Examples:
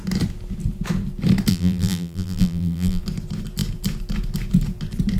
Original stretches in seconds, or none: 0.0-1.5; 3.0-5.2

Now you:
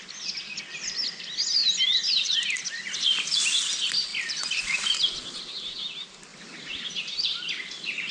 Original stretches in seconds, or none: 0.0-4.1; 4.6-8.1

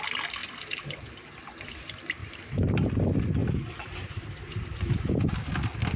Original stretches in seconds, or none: 0.0-2.2; 2.9-3.4; 5.1-6.0

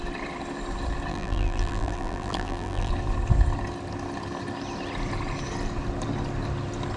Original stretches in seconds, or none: 0.0-1.1; 2.9-7.0

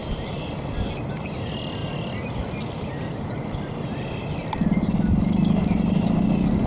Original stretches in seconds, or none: 0.5-6.7

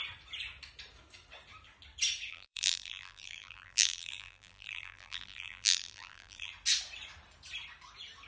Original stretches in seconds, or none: 0.0-2.3; 6.5-8.3